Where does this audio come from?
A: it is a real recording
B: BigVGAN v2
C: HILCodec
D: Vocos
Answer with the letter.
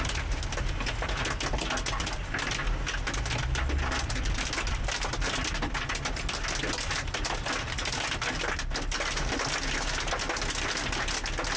A